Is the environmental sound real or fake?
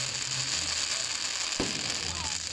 real